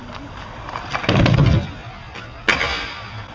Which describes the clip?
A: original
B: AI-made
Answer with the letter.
A